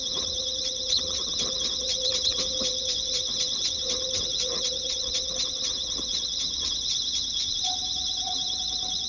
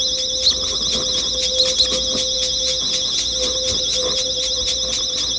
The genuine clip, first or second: second